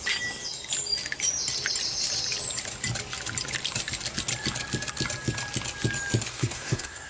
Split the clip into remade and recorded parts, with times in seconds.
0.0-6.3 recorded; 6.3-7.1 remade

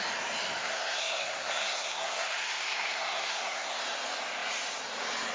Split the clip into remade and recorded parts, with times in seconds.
0.0-0.6 recorded; 0.6-3.8 remade; 3.8-5.3 recorded

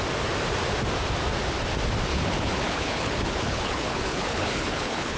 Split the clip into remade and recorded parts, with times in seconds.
0.0-2.1 recorded; 2.1-5.2 remade

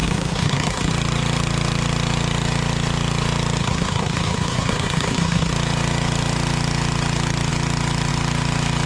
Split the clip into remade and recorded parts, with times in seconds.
0.0-0.9 remade; 0.9-3.6 recorded; 3.6-5.5 remade; 5.5-8.9 recorded

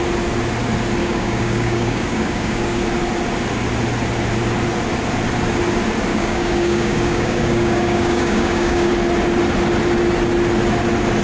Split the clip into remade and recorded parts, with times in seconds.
0.0-1.0 recorded; 1.0-2.8 remade; 2.8-6.1 recorded; 6.1-8.9 remade; 8.9-11.2 recorded

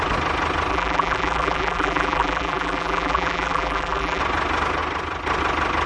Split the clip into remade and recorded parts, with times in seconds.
0.0-0.7 recorded; 0.7-4.2 remade; 4.2-5.9 recorded

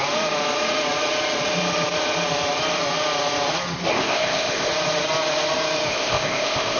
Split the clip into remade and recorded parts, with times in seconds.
0.0-3.9 recorded; 3.9-4.7 remade; 4.7-5.9 recorded; 5.9-6.8 remade